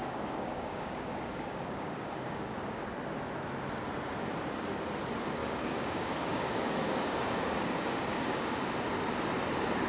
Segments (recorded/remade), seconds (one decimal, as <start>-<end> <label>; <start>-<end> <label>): 0.0-2.8 remade; 2.8-5.4 recorded; 5.4-8.7 remade; 8.7-9.9 recorded